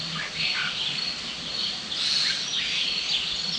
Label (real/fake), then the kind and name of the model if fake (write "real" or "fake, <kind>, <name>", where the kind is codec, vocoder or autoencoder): real